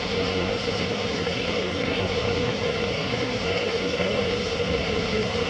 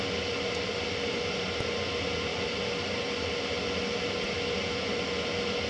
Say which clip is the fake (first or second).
first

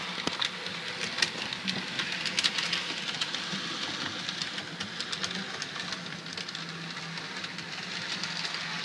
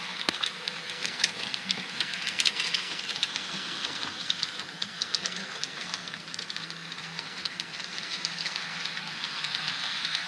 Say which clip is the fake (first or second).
second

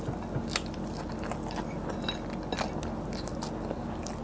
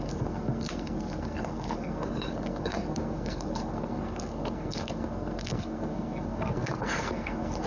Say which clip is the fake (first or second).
second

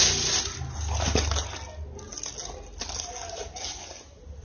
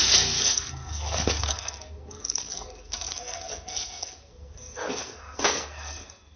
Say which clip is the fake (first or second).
second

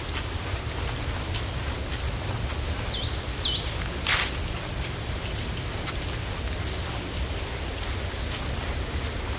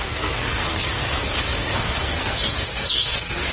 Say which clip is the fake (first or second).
second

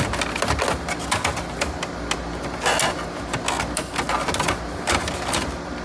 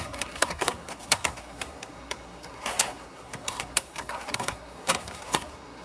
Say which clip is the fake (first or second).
second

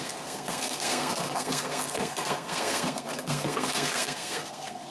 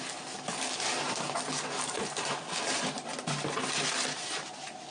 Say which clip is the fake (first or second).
first